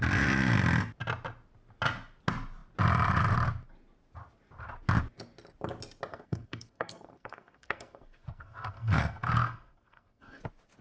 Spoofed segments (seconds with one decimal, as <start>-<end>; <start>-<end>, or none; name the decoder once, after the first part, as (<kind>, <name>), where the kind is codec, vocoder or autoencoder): 6.1-10.4 (codec, SNAC)